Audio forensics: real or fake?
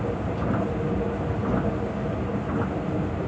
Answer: real